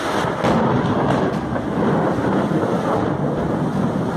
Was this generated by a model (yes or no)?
no